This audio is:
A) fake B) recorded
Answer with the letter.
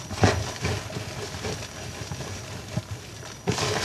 B